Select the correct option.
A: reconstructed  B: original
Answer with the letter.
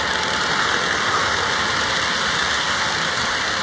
B